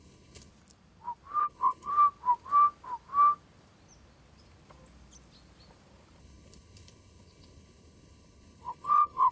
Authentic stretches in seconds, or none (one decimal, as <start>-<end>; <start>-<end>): 0.5-1.4; 1.9-6.2

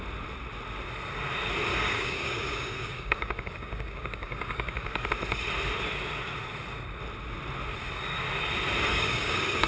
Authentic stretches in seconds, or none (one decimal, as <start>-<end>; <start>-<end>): 0.0-1.7; 5.1-8.9

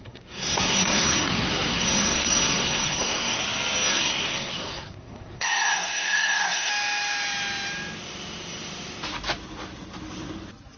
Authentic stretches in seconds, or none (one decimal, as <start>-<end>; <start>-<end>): 3.4-3.9; 6.7-10.8

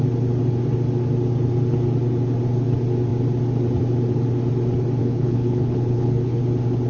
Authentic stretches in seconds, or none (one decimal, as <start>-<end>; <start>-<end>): 0.0-5.0; 6.4-6.9

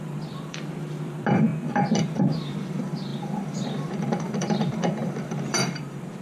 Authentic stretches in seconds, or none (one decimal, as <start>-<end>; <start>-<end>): 1.5-2.0

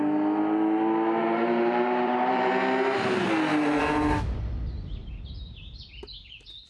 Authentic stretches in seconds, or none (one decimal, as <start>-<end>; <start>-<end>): 0.0-1.2; 2.5-5.0; 5.7-6.7